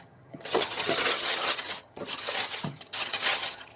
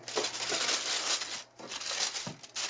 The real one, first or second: second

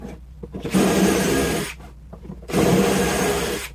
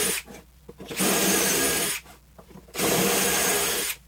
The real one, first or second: second